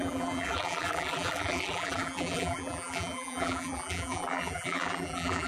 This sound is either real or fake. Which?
fake